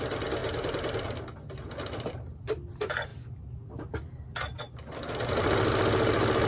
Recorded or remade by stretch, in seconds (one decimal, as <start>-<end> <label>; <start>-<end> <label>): 0.0-6.5 recorded